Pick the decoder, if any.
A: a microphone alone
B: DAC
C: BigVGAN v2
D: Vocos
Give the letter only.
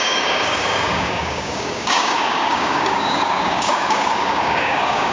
B